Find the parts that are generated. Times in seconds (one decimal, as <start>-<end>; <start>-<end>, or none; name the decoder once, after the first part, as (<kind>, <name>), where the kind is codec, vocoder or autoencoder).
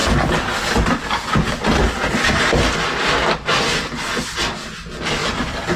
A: 5.2-5.8 (vocoder, BigVGAN v2)